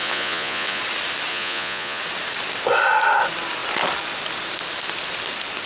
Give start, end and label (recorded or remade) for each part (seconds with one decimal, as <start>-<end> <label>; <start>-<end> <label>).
0.0-0.8 remade; 0.8-1.3 recorded; 1.3-2.0 remade; 2.0-5.7 recorded